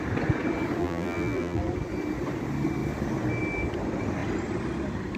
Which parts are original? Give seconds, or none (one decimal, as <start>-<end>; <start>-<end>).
0.0-0.8; 1.6-5.2